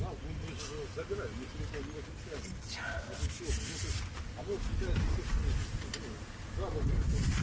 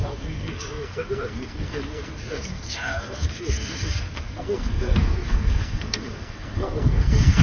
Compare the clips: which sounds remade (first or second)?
second